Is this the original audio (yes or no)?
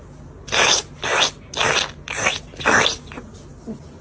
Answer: yes